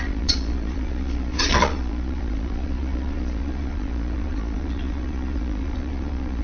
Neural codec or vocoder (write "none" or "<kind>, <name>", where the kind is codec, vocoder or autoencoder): vocoder, Vocos